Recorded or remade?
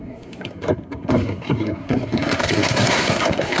remade